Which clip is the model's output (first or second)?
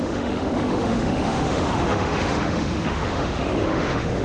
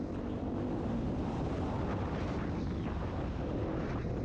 first